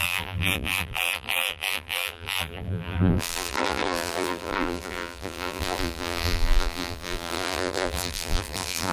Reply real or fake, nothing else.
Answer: fake